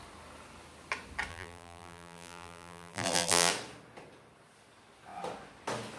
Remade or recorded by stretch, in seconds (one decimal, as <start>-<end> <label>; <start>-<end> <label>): 0.0-1.3 recorded; 1.3-3.5 remade; 3.5-6.0 recorded